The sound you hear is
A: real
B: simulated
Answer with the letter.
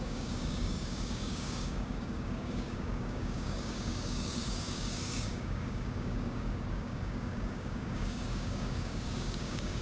B